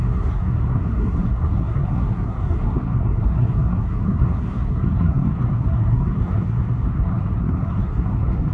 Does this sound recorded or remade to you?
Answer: remade